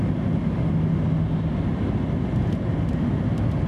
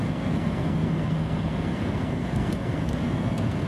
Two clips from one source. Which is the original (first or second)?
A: first